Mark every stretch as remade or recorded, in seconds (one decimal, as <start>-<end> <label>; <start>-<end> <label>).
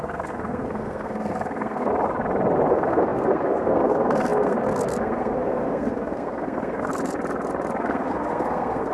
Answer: 0.0-1.9 remade; 1.9-2.7 recorded; 2.7-6.9 remade; 6.9-7.8 recorded; 7.8-8.9 remade